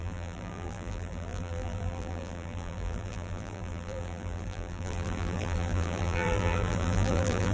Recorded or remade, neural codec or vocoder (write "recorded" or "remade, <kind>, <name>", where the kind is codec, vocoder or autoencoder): remade, vocoder, BigVGAN v2